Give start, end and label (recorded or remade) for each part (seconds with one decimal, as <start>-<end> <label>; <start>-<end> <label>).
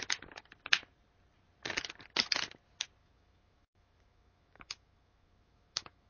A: 0.0-3.0 recorded; 3.0-6.1 remade